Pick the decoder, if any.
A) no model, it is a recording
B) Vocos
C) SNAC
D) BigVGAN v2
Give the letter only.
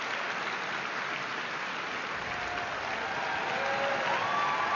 A